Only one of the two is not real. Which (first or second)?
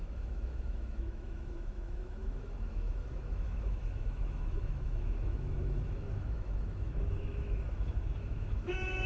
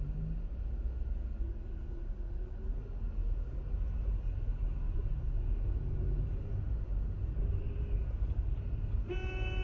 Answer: first